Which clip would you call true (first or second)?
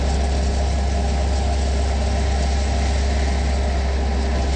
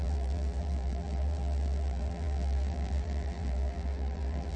first